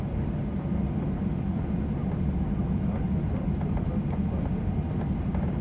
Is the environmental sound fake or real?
real